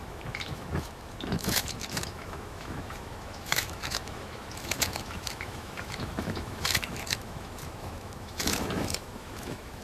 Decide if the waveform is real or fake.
fake